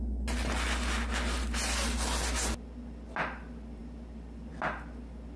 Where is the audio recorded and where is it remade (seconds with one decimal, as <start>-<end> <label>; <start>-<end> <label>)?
0.0-5.4 recorded